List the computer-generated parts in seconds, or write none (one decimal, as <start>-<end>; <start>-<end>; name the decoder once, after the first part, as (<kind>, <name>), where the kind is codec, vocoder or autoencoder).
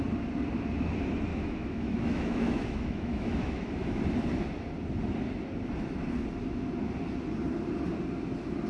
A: 1.3-4.0 (autoencoder, DAC-VAE)